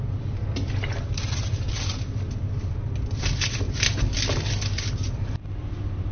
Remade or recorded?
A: recorded